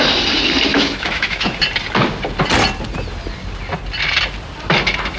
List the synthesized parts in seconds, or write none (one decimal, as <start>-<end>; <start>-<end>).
0.7-1.6